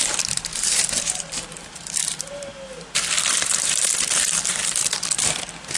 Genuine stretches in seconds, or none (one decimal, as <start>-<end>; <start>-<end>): 2.0-3.5; 4.6-5.8